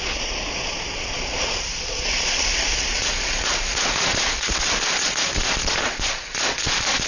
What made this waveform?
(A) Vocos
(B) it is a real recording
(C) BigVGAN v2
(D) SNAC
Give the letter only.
A